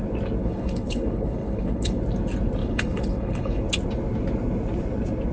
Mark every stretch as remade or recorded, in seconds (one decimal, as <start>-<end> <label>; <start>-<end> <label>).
0.0-0.4 recorded; 0.4-2.0 remade; 2.0-2.6 recorded; 2.6-3.6 remade; 3.6-5.3 recorded